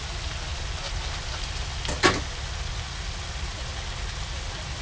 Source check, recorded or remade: recorded